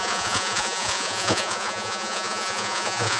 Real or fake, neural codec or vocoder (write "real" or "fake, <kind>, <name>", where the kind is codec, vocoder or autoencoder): fake, vocoder, Vocos